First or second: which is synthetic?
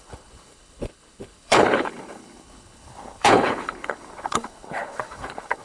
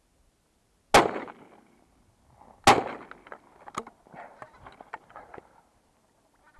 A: first